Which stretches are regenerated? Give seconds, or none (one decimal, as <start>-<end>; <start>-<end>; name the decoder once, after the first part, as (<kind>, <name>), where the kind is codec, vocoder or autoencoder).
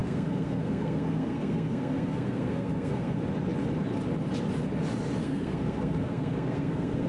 0.0-3.1 (codec, SNAC); 5.2-7.1